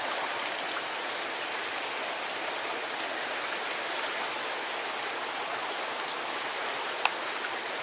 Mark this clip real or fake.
real